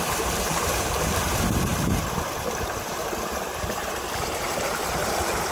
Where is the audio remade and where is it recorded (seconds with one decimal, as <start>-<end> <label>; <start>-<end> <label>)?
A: 0.0-5.5 remade